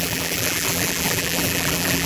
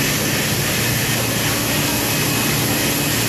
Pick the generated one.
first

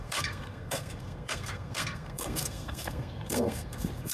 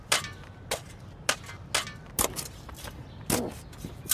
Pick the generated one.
first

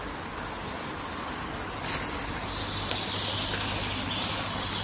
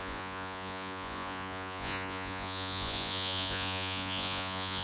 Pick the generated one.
second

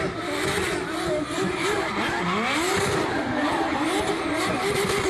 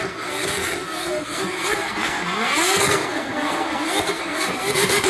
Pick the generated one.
second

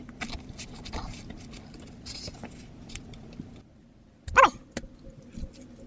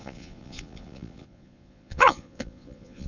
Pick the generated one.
second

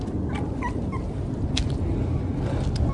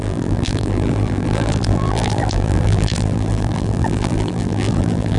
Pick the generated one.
second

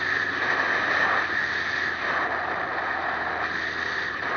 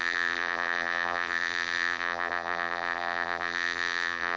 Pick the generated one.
second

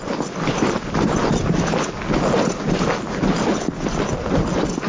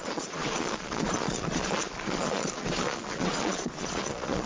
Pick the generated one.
second